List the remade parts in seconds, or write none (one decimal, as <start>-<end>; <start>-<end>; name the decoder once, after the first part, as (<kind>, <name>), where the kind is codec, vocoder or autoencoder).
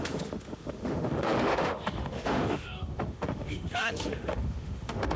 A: 0.0-5.2 (autoencoder, DAC-VAE)